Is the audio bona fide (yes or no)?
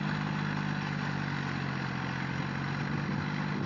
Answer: yes